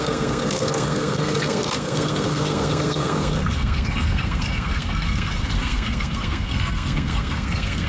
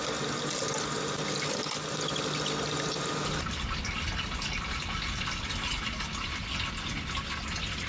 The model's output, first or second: first